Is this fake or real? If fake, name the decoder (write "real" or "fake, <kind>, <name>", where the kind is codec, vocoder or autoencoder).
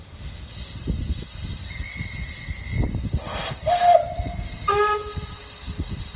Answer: real